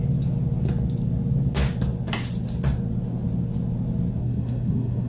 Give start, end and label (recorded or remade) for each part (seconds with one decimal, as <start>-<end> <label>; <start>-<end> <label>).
0.0-4.2 recorded; 4.2-5.1 remade